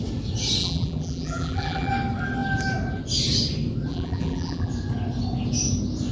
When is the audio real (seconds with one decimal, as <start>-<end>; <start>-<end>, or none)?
0.0-0.6; 1.9-3.9; 4.7-6.1